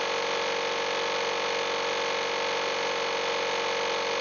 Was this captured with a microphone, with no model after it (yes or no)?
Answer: yes